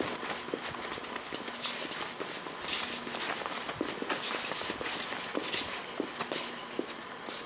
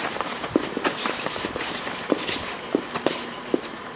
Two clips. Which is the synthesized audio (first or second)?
second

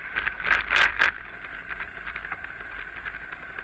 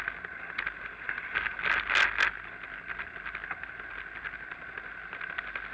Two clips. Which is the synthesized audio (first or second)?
first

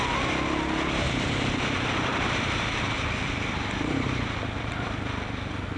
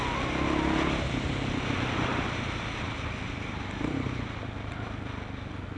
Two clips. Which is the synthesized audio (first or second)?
first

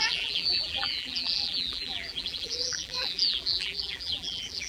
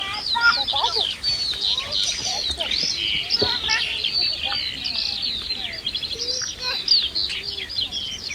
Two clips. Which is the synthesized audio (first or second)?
first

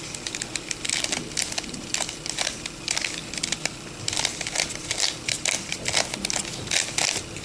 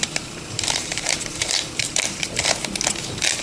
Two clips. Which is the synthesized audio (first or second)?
second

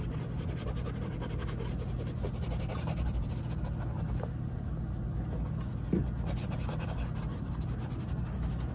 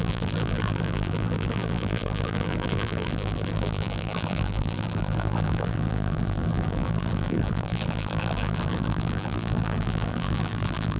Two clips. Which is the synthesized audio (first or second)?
second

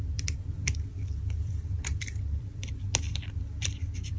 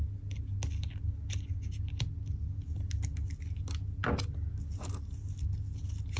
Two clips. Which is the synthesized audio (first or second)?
first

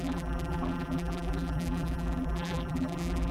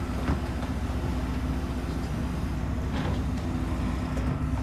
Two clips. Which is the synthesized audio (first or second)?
first